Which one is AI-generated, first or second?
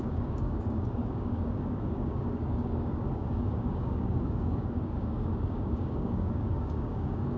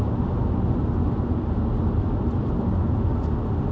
first